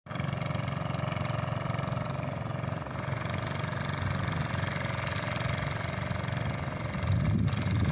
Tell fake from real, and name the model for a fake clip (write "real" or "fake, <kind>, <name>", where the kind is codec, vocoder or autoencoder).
real